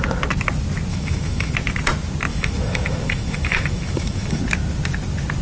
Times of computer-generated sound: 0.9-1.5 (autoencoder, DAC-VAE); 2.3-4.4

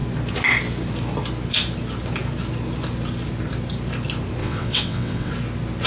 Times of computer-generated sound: 4.4-5.3 (vocoder, WaveNeXt)

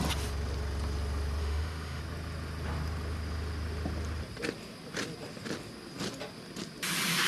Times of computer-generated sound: 1.4-2.0 (autoencoder, DAC-VAE)

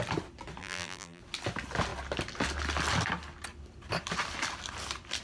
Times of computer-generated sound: 0.6-1.2 (vocoder, BigVGAN v2)

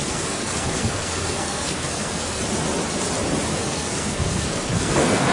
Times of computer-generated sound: 0.0-2.4 (codec, SNAC); 3.5-5.3